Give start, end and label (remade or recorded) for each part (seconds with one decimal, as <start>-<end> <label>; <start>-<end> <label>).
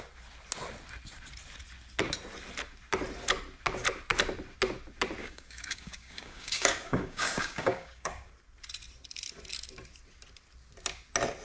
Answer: 0.0-5.2 recorded; 5.2-8.3 remade; 8.3-11.4 recorded